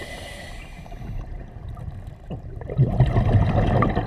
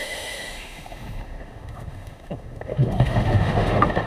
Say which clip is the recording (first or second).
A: first